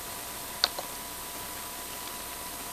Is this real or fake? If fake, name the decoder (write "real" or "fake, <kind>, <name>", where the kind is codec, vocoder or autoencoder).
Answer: real